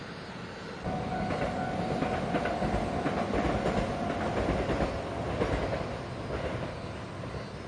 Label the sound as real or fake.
real